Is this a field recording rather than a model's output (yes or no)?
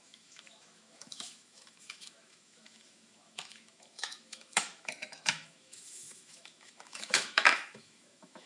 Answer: no